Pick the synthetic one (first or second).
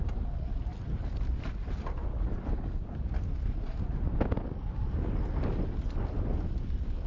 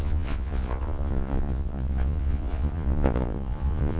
second